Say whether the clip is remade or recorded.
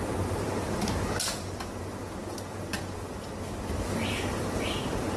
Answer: recorded